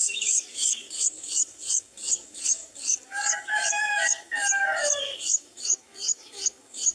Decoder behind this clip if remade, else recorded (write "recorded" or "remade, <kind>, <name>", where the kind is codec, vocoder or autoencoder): remade, codec, DAC